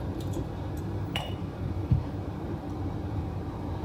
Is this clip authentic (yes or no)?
no